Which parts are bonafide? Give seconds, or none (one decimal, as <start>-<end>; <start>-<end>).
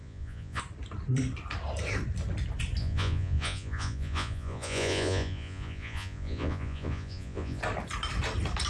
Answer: 0.6-2.8; 7.6-8.7